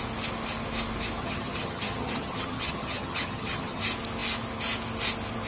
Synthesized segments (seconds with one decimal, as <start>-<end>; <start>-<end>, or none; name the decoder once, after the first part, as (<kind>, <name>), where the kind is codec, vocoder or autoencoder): 1.2-3.8 (vocoder, HiFi-GAN)